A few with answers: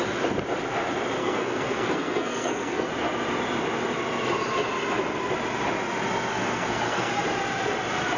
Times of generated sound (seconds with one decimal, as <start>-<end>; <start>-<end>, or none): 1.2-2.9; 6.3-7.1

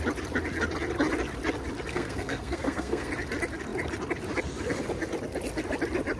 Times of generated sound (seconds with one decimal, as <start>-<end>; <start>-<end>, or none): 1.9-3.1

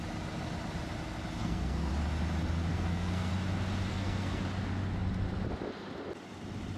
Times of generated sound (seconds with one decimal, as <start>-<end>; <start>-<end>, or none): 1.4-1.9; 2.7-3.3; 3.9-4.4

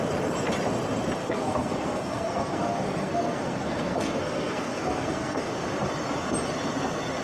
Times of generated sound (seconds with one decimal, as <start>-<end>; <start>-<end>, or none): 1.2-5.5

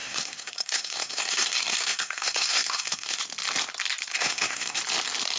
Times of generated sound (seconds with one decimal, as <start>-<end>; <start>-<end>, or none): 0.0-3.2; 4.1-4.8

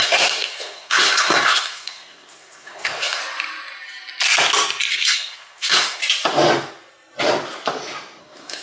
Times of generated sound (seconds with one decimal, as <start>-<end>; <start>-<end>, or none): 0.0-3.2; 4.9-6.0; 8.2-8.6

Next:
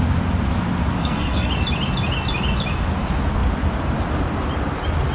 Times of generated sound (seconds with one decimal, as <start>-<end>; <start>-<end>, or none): 1.0-1.5